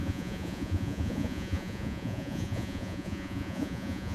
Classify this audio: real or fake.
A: fake